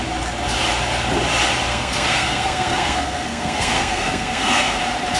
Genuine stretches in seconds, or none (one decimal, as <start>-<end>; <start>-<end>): 0.0-1.7; 4.8-5.2